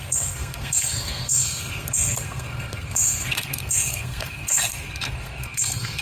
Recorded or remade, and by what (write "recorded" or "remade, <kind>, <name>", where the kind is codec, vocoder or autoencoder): remade, codec, SNAC